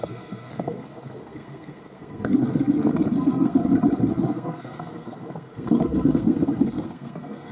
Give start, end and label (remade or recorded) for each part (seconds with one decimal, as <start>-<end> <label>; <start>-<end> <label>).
0.0-3.6 remade; 3.6-4.1 recorded; 4.1-7.5 remade